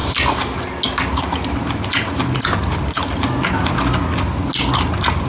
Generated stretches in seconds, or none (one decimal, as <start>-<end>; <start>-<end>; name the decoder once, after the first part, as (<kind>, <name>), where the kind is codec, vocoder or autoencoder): none